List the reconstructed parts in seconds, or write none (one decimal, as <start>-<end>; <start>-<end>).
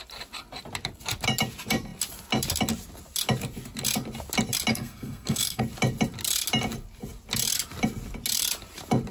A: 4.7-5.6